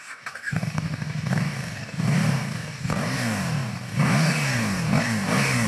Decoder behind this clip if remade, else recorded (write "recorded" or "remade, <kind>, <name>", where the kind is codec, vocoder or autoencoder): remade, codec, DAC